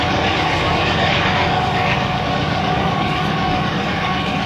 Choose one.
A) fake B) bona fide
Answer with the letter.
A